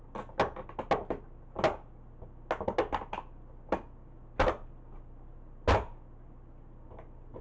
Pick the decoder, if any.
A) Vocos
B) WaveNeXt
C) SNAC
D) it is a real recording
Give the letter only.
D